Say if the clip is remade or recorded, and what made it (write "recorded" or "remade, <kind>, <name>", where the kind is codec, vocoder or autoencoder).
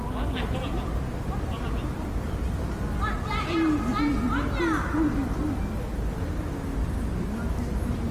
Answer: recorded